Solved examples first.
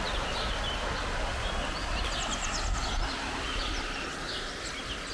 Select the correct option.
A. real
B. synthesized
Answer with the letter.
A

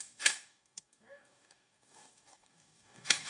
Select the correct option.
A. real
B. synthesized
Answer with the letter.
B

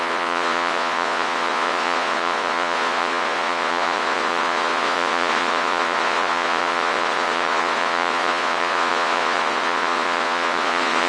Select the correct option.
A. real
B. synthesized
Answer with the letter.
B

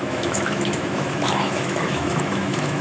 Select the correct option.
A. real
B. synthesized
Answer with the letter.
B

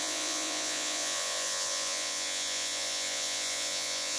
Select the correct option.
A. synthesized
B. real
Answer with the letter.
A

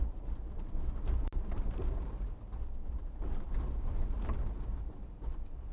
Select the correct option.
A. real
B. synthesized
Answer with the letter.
A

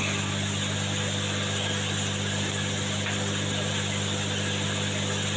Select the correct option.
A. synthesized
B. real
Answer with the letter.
B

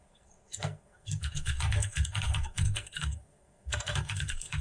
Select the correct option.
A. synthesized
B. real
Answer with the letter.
A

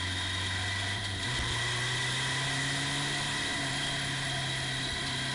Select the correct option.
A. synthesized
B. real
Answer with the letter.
B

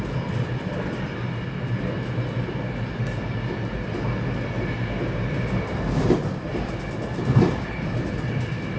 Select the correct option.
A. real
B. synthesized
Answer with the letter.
A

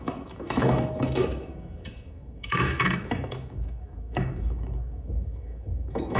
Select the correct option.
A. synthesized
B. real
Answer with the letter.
A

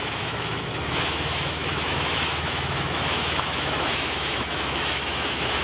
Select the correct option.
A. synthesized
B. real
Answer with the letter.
A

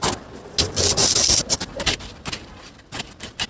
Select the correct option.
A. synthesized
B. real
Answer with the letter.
B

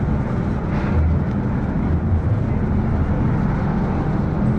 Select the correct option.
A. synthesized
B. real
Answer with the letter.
B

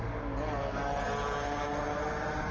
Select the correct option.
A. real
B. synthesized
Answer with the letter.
A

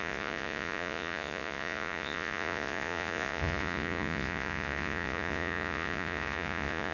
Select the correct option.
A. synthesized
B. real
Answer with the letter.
A